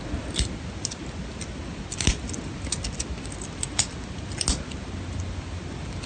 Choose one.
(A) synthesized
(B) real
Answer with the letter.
B